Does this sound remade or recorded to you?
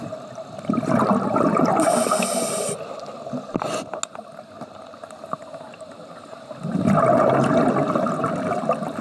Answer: recorded